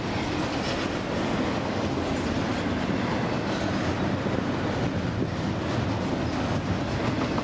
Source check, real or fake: real